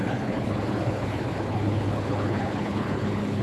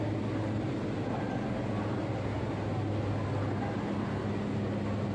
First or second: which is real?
second